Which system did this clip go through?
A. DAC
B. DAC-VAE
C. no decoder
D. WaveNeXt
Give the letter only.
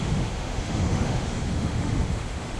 B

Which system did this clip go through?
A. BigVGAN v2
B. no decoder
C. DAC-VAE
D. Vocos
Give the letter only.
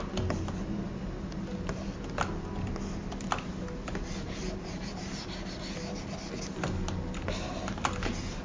B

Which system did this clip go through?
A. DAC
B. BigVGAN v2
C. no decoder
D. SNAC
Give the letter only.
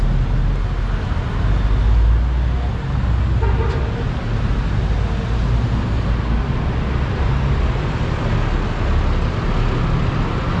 C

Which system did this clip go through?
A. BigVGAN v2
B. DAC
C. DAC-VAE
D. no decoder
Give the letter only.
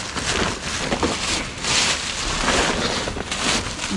D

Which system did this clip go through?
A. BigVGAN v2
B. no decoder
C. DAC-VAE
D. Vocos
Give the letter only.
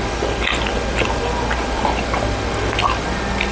B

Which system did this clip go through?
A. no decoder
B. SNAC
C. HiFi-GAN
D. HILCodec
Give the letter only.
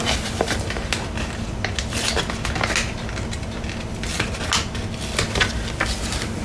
A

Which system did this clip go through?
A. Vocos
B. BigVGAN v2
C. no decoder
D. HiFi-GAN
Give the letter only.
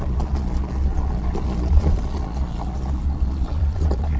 A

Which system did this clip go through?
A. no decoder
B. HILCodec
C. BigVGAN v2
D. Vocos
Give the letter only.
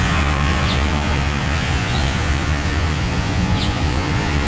D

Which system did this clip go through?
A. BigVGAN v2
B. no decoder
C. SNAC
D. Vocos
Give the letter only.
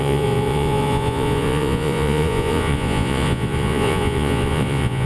D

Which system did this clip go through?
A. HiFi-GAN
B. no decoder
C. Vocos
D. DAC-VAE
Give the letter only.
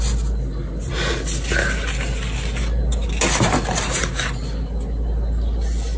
B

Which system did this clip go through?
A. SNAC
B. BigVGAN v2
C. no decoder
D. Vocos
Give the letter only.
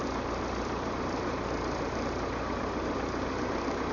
C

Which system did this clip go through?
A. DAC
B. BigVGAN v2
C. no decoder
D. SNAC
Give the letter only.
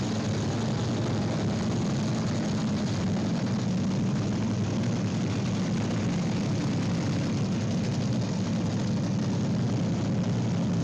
C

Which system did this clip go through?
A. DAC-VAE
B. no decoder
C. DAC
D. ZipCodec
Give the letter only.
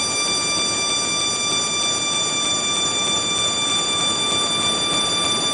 B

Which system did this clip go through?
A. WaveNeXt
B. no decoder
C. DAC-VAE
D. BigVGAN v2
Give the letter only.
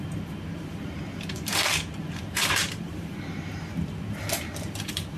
D